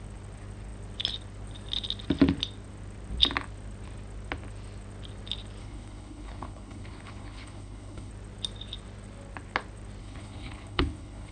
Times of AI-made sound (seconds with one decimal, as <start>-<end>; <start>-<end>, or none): 5.6-8.1; 10.0-11.3